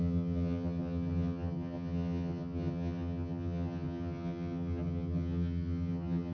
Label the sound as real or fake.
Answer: fake